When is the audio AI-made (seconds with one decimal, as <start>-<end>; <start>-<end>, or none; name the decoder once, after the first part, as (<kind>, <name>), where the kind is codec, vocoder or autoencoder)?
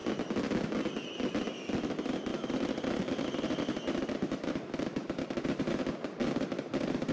2.3-5.8 (vocoder, BigVGAN v2); 6.2-7.1